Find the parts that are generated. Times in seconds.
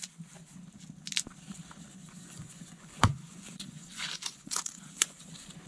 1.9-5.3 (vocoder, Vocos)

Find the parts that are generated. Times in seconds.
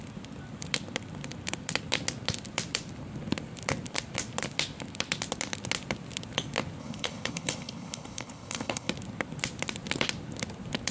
6.8-8.9 (codec, HILCodec)